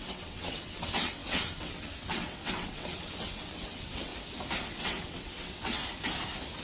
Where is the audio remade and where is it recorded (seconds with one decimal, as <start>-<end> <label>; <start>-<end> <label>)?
0.0-4.1 remade; 4.1-4.8 recorded; 4.8-5.8 remade; 5.8-6.6 recorded

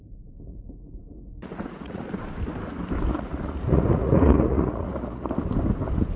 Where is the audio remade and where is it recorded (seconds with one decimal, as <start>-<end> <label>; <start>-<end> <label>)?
0.0-0.5 recorded; 0.5-2.1 remade; 2.1-3.1 recorded; 3.1-5.3 remade; 5.3-6.2 recorded

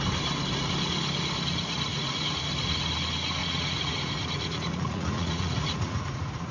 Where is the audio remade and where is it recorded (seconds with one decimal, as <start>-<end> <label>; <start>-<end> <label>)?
0.0-1.9 recorded; 1.9-2.4 remade; 2.4-3.4 recorded; 3.4-6.5 remade

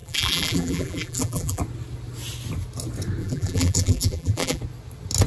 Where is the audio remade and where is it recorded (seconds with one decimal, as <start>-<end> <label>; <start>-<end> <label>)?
0.0-1.6 remade; 1.6-3.2 recorded; 3.2-4.6 remade; 4.6-5.3 recorded

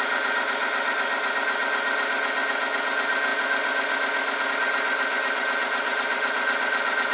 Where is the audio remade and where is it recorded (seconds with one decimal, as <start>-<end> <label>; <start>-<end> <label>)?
0.0-7.1 recorded

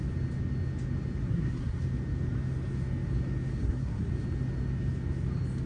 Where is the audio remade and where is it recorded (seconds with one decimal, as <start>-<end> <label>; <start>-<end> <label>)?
0.0-1.2 recorded; 1.2-1.8 remade; 1.8-3.6 recorded; 3.6-4.1 remade; 4.1-5.7 recorded

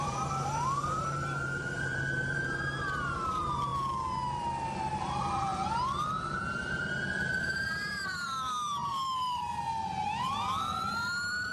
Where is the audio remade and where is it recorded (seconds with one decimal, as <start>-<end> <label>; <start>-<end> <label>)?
0.0-3.7 remade; 3.7-5.0 recorded; 5.0-11.5 remade